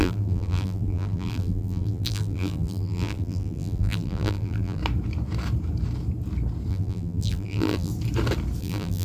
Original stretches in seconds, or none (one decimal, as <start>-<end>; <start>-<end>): 4.8-6.7; 7.9-8.6